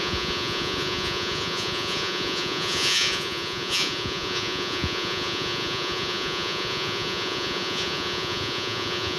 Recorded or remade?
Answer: remade